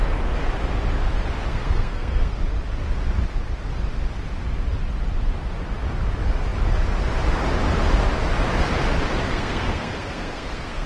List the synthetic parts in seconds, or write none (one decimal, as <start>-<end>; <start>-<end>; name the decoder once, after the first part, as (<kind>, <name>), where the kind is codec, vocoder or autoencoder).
1.5-2.4 (codec, SNAC); 9.3-10.9